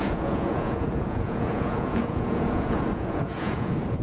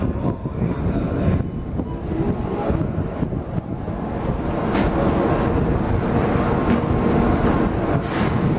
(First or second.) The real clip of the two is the second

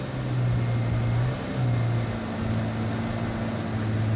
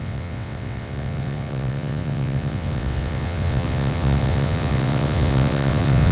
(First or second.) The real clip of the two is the first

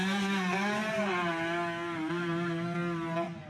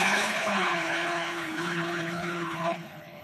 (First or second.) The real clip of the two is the first